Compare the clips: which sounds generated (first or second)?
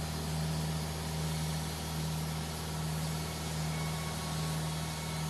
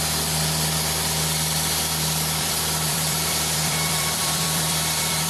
second